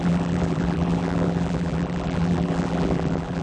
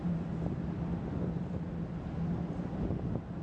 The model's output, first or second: first